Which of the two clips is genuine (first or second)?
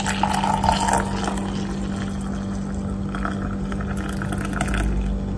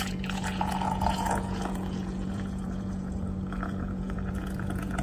first